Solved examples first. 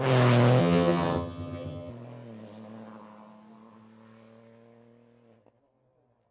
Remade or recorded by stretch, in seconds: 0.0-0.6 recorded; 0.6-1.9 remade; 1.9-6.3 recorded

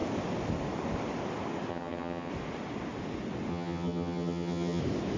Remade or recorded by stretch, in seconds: 0.0-1.7 recorded; 1.7-2.3 remade; 2.3-3.5 recorded; 3.5-4.8 remade; 4.8-5.2 recorded

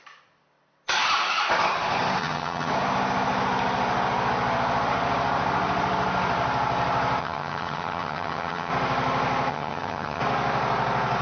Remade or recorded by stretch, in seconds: 0.0-2.2 recorded; 2.2-2.7 remade; 2.7-7.2 recorded; 7.2-8.7 remade; 8.7-9.5 recorded; 9.5-10.2 remade; 10.2-11.2 recorded

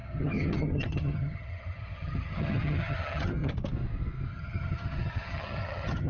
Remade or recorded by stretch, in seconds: 0.0-3.5 remade; 3.5-4.3 recorded; 4.3-6.1 remade

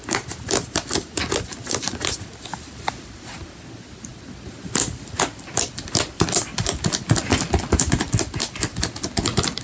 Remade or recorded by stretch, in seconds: 0.0-9.6 recorded

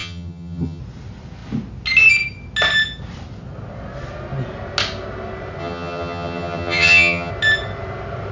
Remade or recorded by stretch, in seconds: 0.0-0.8 remade; 0.8-5.6 recorded; 5.6-7.3 remade; 7.3-8.3 recorded